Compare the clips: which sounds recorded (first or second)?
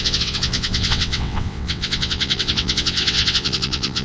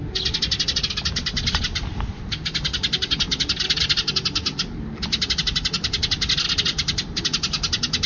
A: second